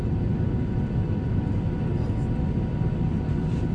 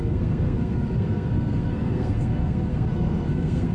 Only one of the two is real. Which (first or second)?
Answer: first